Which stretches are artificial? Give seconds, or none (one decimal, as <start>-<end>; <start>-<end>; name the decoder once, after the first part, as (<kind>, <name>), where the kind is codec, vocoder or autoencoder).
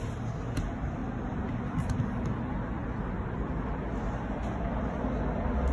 none